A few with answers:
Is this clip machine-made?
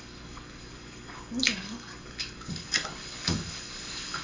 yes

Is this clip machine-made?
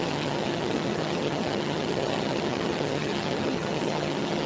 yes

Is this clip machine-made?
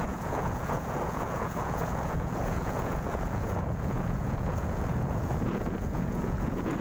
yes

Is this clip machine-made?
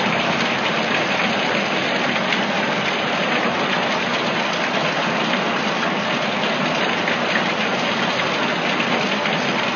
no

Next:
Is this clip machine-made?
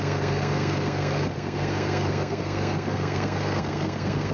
yes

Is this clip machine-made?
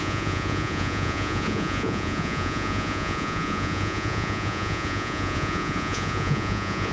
yes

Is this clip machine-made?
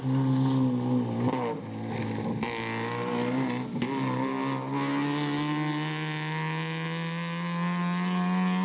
no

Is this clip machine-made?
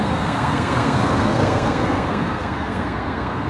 yes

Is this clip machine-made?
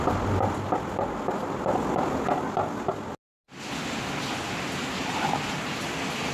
no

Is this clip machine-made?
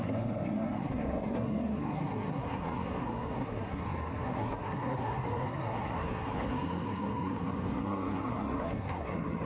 yes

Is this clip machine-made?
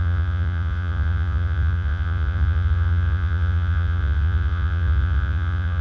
yes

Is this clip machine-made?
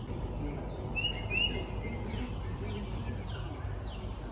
no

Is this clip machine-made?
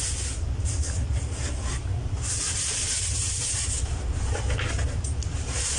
no